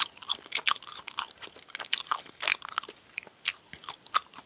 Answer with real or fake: real